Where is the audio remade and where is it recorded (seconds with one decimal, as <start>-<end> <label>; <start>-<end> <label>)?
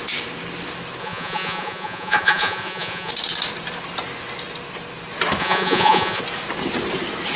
0.0-1.0 recorded; 1.0-3.1 remade; 3.1-5.4 recorded; 5.4-6.2 remade; 6.2-7.4 recorded